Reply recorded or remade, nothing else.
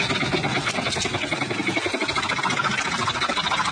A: recorded